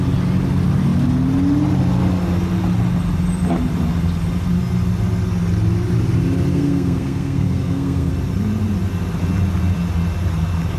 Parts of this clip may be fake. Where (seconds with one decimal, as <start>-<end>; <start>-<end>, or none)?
6.5-8.1